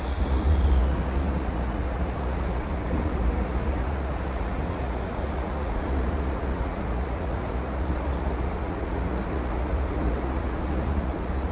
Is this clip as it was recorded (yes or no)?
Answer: no